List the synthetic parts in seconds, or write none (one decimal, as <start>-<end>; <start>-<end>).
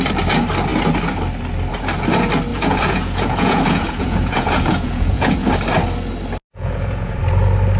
2.5-5.5; 6.5-7.2